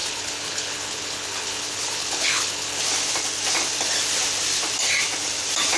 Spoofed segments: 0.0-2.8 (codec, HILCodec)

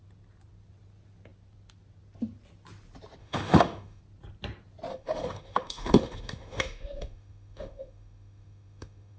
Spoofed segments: 3.2-4.0 (autoencoder, DAC-VAE); 4.9-9.2